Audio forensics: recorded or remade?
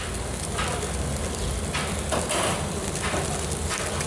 recorded